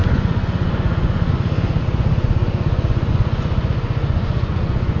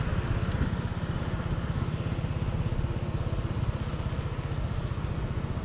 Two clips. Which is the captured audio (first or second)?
second